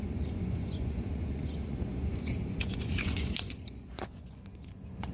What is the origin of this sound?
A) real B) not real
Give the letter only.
B